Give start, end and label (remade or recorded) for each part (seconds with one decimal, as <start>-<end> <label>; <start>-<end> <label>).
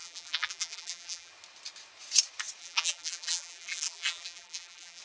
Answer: 0.0-1.3 remade; 1.3-2.6 recorded; 2.6-5.0 remade